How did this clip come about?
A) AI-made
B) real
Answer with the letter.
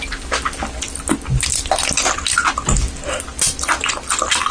B